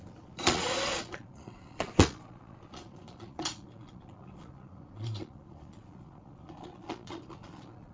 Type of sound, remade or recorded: remade